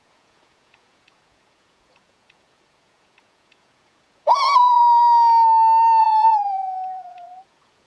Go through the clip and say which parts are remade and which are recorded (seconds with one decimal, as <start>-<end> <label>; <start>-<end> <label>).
0.0-4.8 remade; 4.8-6.0 recorded; 6.0-7.9 remade